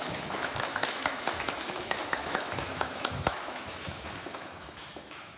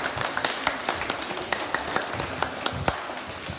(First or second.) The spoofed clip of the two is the first